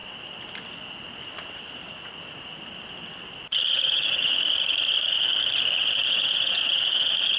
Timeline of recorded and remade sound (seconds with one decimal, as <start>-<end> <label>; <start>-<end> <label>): 0.0-3.7 recorded; 3.7-5.3 remade; 5.3-5.8 recorded; 5.8-7.4 remade